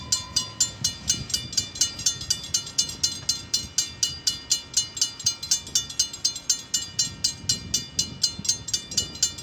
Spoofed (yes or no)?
no